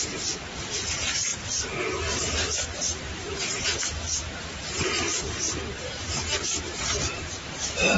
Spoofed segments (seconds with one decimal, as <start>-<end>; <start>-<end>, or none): 1.3-3.8